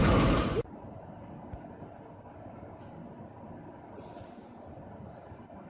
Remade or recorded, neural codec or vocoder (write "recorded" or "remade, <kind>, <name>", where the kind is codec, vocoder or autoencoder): recorded